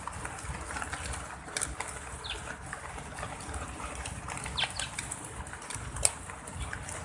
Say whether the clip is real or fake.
real